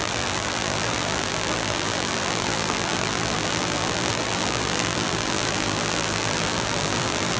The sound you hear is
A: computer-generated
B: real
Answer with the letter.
A